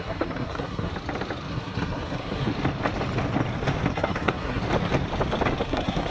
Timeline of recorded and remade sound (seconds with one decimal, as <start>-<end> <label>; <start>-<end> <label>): 0.0-0.9 remade; 0.9-1.5 recorded; 1.5-2.5 remade; 2.5-3.9 recorded; 3.9-4.6 remade; 4.6-5.6 recorded; 5.6-6.1 remade